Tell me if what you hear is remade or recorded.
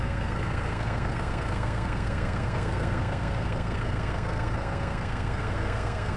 remade